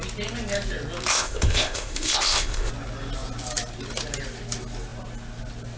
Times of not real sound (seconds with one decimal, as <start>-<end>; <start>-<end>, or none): 1.1-2.7